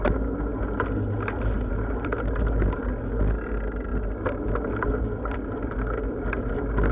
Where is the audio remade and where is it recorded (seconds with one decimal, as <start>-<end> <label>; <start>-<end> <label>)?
0.0-6.9 recorded